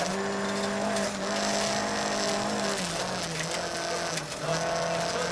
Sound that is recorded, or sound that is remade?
recorded